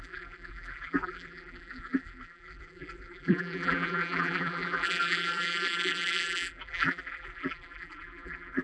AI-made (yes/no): yes